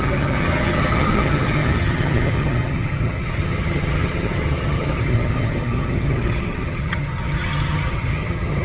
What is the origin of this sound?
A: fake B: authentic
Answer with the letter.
A